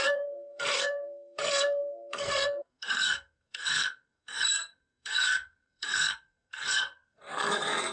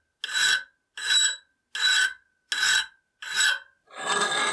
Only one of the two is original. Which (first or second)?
second